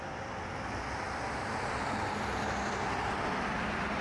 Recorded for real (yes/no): yes